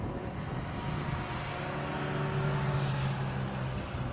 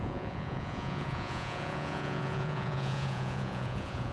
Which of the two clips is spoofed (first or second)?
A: second